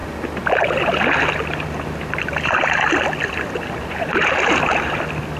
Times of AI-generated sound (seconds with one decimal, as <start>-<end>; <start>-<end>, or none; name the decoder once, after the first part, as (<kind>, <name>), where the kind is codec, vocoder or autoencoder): none